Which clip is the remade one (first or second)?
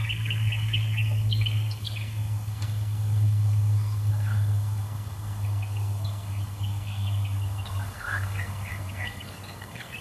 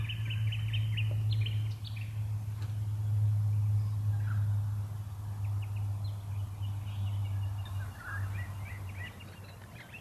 first